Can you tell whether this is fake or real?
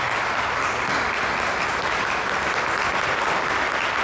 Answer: real